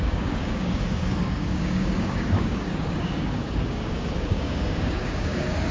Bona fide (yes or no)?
no